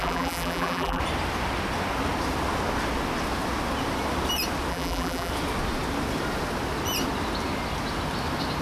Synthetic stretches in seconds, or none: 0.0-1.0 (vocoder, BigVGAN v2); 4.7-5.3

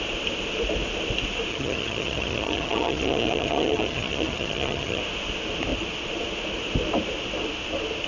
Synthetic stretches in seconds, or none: 1.5-5.0 (vocoder, HiFi-GAN)

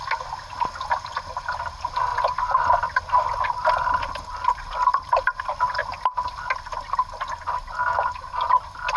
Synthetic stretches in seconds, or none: 2.1-4.6 (vocoder, BigVGAN v2); 5.8-6.4

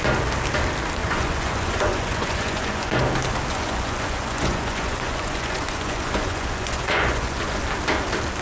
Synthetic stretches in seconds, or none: 1.0-3.0 (vocoder, Vocos); 3.5-7.6